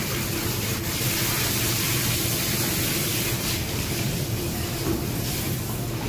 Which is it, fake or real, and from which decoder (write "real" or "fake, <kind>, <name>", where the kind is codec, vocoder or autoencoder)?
fake, vocoder, BigVGAN v2